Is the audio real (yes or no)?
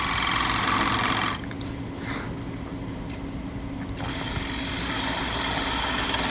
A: yes